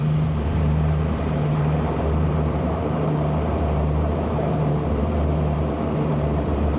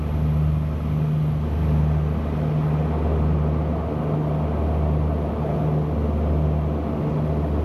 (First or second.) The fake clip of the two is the first